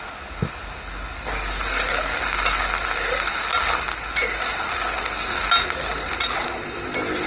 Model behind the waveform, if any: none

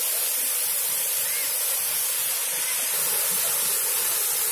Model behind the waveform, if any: none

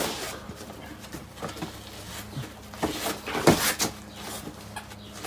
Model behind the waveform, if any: none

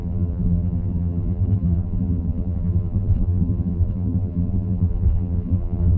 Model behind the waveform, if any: vocoder, BigVGAN v2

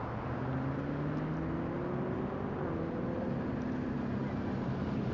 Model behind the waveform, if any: none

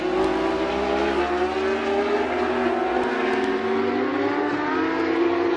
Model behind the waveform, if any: none